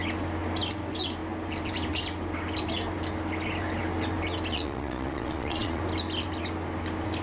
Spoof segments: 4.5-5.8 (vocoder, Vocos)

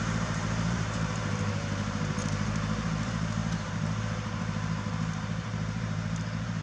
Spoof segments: 0.0-6.6 (vocoder, BigVGAN v2)

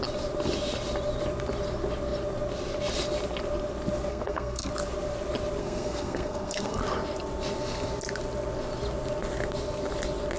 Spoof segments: 4.1-4.7 (codec, SNAC); 5.6-6.8

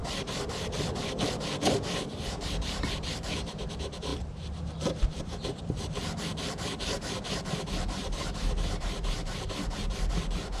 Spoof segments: 1.6-10.6 (vocoder, BigVGAN v2)

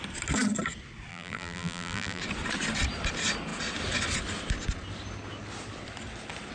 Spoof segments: 1.1-2.2 (vocoder, BigVGAN v2)

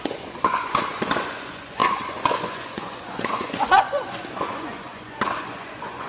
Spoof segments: 0.0-6.1 (vocoder, Vocos)

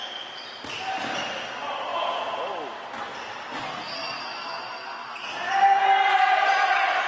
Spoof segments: 1.9-2.5 (vocoder, Vocos)

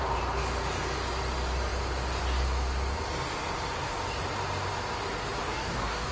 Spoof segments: 5.4-6.1 (codec, DAC)